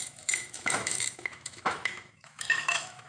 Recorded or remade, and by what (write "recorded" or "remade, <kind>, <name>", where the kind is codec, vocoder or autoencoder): remade, autoencoder, DAC-VAE